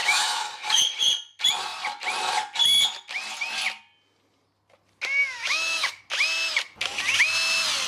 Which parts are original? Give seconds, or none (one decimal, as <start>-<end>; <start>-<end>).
0.8-5.2; 6.0-7.9